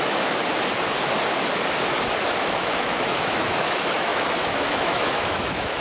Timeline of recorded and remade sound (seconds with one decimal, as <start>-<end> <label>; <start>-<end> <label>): 0.0-0.4 remade; 0.4-2.3 recorded; 2.3-5.8 remade